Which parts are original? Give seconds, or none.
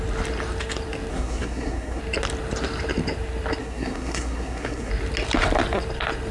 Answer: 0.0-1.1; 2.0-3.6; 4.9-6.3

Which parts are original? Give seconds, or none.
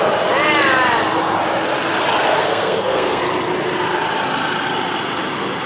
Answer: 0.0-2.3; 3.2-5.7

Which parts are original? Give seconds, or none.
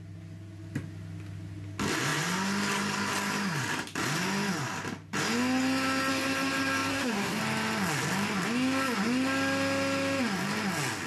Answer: 0.0-6.9; 7.4-11.1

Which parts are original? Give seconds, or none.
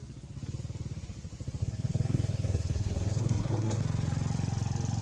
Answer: 0.0-1.6; 3.8-5.0